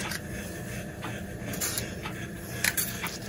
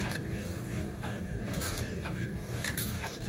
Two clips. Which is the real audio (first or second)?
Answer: first